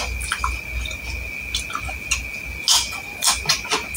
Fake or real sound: real